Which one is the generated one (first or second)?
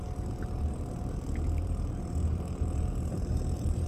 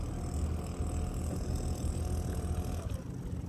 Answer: first